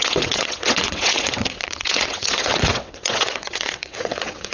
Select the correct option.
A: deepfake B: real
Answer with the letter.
A